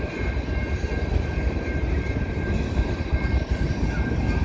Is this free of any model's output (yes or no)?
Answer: no